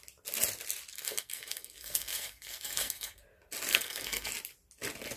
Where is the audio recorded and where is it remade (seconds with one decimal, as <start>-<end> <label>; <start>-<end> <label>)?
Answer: 0.0-0.9 recorded; 0.9-3.2 remade; 3.2-3.7 recorded; 3.7-4.3 remade; 4.3-5.2 recorded